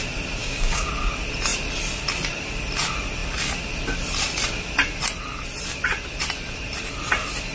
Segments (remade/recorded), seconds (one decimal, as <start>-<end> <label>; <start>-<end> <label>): 0.0-0.4 recorded; 0.4-0.9 remade; 0.9-7.5 recorded

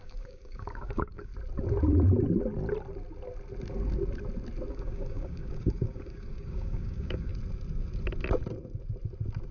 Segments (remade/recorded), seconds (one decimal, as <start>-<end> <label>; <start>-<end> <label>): 0.0-1.3 remade; 1.3-4.7 recorded; 4.7-7.3 remade; 7.3-9.5 recorded

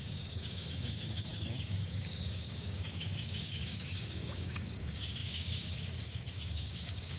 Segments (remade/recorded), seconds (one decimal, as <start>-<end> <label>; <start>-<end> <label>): 0.0-7.2 remade

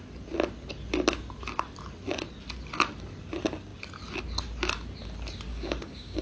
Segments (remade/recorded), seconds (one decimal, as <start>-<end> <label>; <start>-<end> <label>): 0.0-5.5 recorded; 5.5-6.2 remade

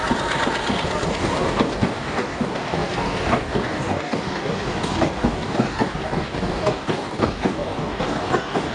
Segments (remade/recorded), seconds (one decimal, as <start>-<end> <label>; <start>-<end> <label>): 0.0-1.2 recorded; 1.2-8.7 remade

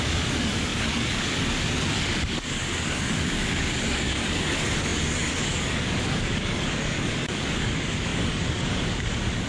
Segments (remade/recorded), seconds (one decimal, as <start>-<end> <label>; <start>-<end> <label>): 0.0-9.5 remade

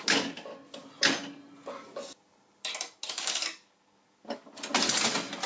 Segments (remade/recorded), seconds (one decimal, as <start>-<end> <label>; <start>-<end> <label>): 0.0-0.5 remade; 0.5-3.1 recorded; 3.1-4.5 remade; 4.5-5.5 recorded

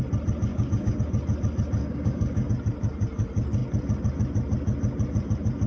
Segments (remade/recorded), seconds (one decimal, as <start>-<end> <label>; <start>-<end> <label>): 0.0-0.5 recorded; 0.5-1.0 remade; 1.0-1.8 recorded; 1.8-2.5 remade; 2.5-5.7 recorded